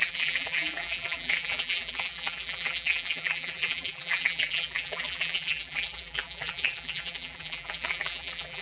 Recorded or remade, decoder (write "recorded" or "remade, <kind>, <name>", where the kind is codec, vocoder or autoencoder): remade, vocoder, BigVGAN v2